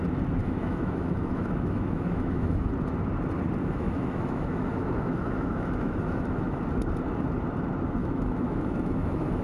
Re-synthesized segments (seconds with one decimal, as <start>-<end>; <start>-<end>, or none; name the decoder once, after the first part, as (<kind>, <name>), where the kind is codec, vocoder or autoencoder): 0.4-2.7 (autoencoder, DAC-VAE); 3.6-6.6; 8.0-9.4